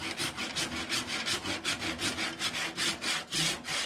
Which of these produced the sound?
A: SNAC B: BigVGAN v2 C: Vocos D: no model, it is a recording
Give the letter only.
D